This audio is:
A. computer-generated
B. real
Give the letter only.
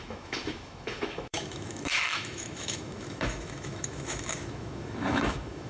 A